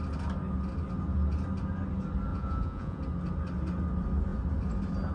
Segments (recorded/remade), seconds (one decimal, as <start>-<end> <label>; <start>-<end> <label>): 0.0-2.3 recorded; 2.3-3.0 remade; 3.0-5.1 recorded